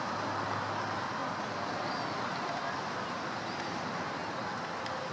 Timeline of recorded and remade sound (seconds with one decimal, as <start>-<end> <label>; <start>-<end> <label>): 0.0-5.1 recorded